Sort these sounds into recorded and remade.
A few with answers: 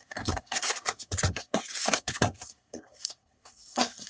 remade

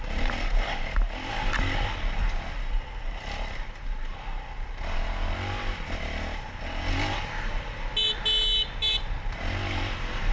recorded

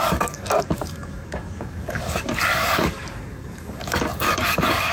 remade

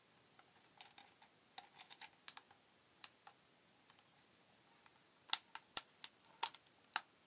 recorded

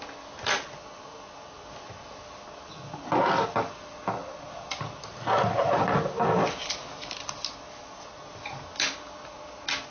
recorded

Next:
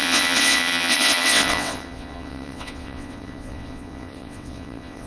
remade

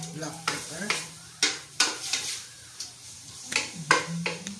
remade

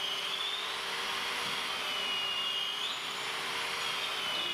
recorded